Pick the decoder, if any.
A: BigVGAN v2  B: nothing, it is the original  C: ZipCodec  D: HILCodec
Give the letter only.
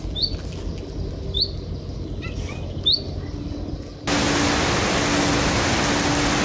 B